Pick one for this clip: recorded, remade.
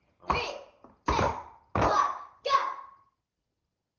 recorded